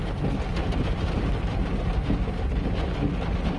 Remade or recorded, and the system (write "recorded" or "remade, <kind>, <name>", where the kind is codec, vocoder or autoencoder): recorded